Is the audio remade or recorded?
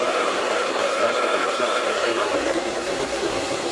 remade